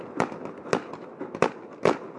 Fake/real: real